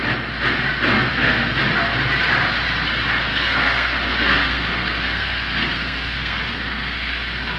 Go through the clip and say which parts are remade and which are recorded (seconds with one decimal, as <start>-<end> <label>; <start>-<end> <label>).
0.0-1.1 recorded; 1.1-1.6 remade; 1.6-3.3 recorded; 3.3-7.6 remade